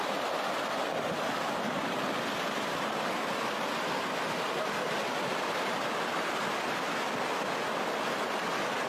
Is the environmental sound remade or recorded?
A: recorded